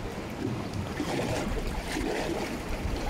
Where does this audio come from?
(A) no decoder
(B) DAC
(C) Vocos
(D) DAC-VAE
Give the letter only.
A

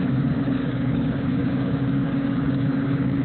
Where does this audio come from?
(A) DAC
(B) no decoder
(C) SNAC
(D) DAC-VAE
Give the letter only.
A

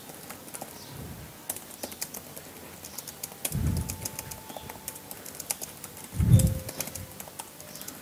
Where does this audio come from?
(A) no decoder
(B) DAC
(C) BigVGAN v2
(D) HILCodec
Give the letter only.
A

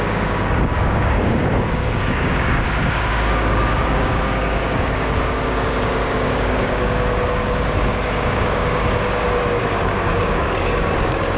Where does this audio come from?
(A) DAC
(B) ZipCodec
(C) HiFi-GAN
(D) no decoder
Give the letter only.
A